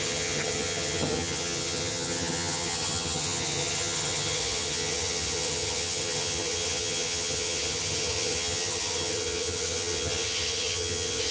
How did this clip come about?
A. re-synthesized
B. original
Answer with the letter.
A